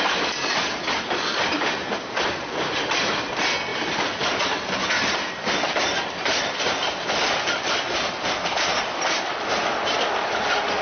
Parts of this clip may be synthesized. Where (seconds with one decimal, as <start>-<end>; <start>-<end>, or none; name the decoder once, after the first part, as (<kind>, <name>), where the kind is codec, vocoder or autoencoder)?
none